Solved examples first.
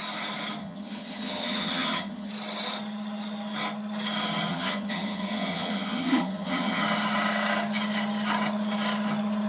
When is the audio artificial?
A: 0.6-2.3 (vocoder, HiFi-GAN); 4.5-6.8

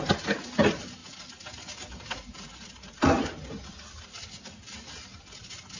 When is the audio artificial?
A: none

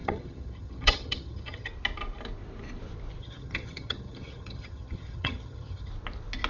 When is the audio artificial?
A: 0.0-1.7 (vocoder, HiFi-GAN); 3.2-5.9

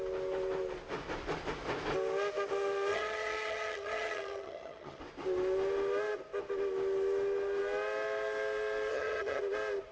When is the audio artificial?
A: 2.9-5.0 (vocoder, HiFi-GAN); 8.9-9.4

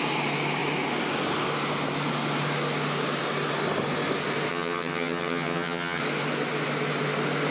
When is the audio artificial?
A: 4.5-6.0 (vocoder, HiFi-GAN)